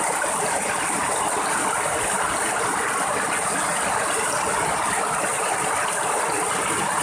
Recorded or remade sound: recorded